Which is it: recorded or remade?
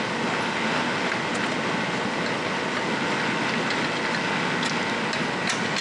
recorded